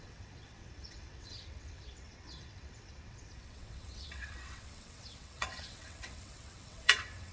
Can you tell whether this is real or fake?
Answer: fake